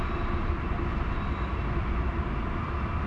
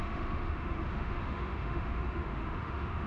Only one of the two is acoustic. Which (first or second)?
first